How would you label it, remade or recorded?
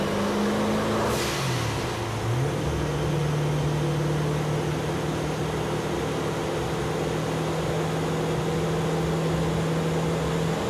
recorded